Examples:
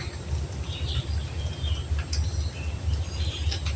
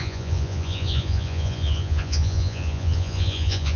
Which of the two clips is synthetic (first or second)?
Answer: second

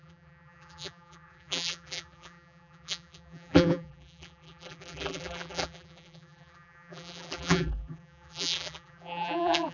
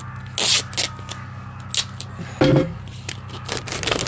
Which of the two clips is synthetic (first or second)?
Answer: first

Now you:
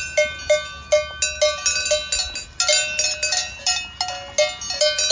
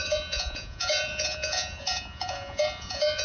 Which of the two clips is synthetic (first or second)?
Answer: second